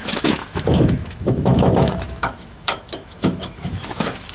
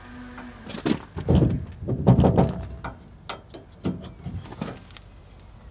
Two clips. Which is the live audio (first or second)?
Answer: second